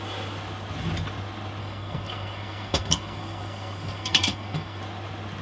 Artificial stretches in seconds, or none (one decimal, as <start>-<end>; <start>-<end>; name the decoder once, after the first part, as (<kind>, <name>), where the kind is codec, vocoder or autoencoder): 1.6-4.8 (codec, SNAC)